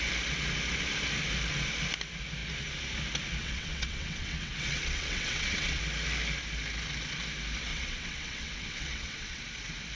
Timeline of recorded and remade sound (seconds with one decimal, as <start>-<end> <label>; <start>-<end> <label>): 0.0-3.4 recorded; 3.4-5.8 remade; 5.8-7.7 recorded; 7.7-9.4 remade; 9.4-10.0 recorded